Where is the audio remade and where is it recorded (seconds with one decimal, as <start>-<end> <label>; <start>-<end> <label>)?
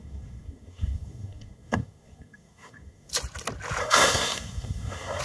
0.0-3.1 remade; 3.1-3.8 recorded; 3.8-5.2 remade